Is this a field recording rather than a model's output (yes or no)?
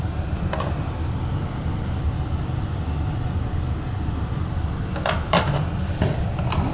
yes